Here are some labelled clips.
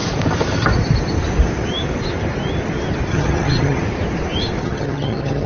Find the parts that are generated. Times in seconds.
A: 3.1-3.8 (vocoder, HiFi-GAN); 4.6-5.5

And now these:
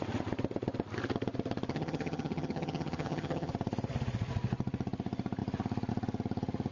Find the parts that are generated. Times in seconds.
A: 1.7-3.5 (vocoder, HiFi-GAN)

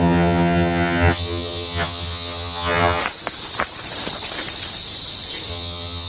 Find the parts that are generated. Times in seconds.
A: 0.0-3.0 (vocoder, HiFi-GAN); 5.5-6.1

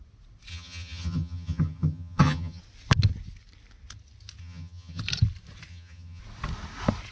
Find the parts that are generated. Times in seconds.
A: 0.5-2.6 (vocoder, HiFi-GAN); 4.4-5.0; 5.7-6.2

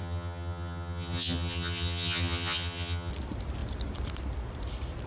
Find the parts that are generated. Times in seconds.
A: 0.0-3.1 (vocoder, HiFi-GAN)

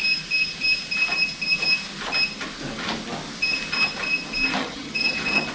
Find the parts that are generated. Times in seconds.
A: 4.6-5.5 (vocoder, HiFi-GAN)

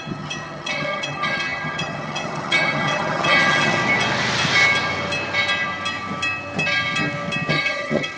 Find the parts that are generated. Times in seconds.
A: 0.0-3.8 (vocoder, HiFi-GAN); 7.5-8.2

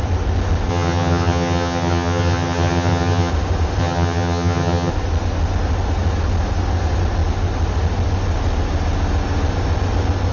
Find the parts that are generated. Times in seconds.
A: 0.7-3.3 (vocoder, HiFi-GAN); 3.8-4.9